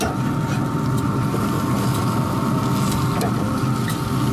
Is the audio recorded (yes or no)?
yes